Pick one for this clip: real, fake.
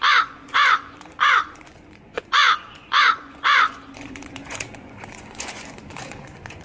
fake